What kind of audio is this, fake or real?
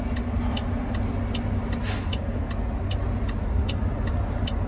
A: real